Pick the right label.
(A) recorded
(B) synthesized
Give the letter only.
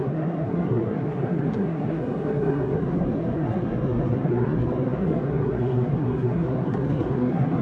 B